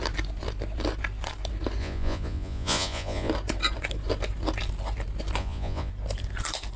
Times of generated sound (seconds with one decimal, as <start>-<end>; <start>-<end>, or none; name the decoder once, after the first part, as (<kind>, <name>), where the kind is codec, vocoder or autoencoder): 1.8-3.3 (vocoder, Vocos); 5.4-5.9